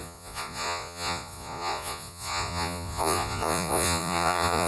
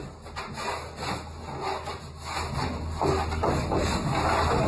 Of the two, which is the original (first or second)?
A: second